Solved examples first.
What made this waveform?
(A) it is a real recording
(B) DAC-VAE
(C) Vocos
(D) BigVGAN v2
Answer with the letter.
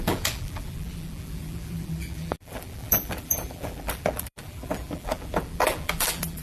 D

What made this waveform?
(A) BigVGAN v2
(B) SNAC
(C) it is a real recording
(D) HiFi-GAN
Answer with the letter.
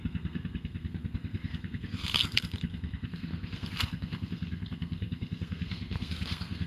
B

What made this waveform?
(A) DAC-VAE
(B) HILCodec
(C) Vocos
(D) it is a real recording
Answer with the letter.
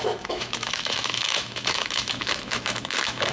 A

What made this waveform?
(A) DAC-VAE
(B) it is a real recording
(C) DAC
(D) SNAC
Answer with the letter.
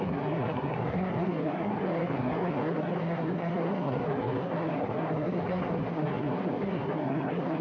D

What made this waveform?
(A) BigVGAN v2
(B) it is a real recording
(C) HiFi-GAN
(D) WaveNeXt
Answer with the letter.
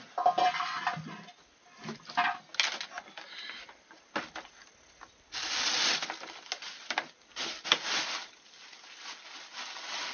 B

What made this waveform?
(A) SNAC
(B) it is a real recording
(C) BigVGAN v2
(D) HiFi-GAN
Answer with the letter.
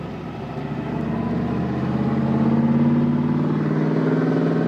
B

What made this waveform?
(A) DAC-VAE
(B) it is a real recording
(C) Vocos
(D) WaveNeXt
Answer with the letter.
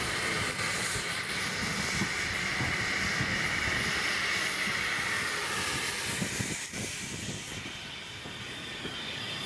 B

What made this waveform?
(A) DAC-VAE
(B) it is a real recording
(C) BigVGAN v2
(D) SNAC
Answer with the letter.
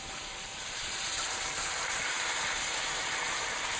C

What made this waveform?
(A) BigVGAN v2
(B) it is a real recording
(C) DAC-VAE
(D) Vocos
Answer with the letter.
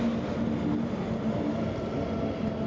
B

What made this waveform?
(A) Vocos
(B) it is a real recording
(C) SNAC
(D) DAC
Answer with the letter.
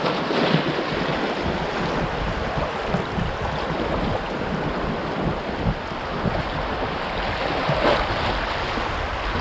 B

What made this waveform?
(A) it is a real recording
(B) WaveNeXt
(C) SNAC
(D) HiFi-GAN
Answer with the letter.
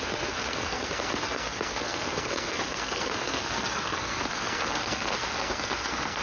C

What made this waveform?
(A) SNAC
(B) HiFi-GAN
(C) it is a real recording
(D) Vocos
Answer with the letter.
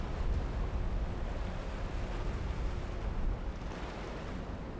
C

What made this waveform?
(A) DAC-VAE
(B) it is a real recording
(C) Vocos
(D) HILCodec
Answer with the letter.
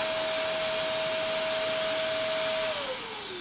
B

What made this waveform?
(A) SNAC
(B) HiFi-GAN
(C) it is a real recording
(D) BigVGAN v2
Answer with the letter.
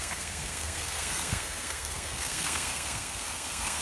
A